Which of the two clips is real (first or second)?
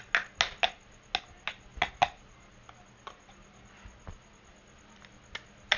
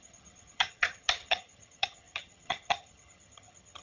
first